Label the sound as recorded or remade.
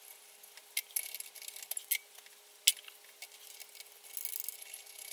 recorded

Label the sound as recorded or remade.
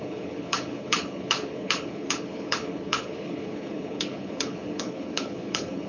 remade